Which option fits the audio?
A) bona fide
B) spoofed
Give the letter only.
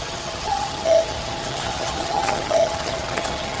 B